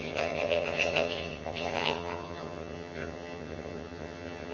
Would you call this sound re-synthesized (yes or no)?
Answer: yes